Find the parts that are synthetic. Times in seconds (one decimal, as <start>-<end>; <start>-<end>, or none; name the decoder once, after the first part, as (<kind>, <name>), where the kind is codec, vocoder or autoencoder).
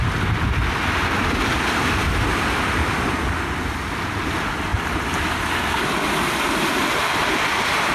0.0-2.8 (vocoder, BigVGAN v2); 3.9-4.7; 5.6-7.9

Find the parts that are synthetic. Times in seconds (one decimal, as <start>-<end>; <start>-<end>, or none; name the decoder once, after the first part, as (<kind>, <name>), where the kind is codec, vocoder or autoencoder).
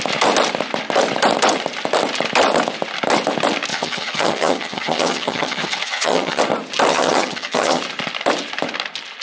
3.7-6.4 (vocoder, HiFi-GAN); 6.9-7.8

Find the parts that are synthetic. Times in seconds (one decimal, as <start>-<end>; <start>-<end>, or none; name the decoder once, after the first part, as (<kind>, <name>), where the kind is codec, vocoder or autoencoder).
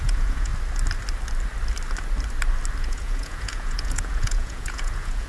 0.0-0.5 (vocoder, Vocos); 2.8-5.3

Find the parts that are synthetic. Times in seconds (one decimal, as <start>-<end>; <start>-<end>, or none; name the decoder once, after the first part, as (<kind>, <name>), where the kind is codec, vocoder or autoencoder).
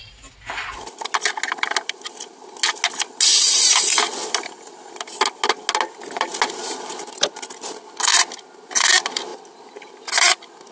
none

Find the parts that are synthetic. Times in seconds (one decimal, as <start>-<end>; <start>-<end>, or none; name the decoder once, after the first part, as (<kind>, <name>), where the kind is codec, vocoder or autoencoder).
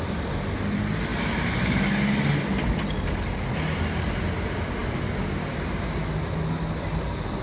none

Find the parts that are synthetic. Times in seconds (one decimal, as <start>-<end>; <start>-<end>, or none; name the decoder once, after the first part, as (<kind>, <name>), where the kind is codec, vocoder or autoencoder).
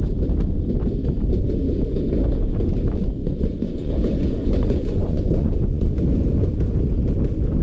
3.2-3.9 (vocoder, Vocos); 4.4-6.0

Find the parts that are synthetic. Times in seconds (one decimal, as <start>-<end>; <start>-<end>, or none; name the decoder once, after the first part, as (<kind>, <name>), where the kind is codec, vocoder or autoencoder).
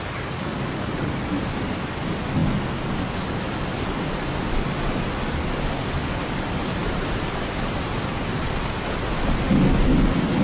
none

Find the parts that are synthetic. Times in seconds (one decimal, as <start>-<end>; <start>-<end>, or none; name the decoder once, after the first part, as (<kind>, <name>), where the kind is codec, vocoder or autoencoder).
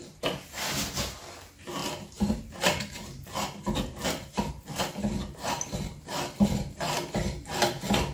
none